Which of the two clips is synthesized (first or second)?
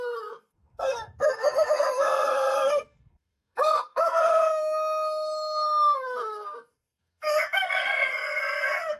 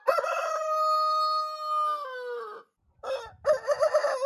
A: first